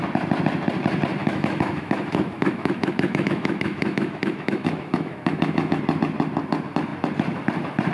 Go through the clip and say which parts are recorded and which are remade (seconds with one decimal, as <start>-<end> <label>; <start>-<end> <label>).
0.0-1.2 recorded; 1.2-5.8 remade; 5.8-7.9 recorded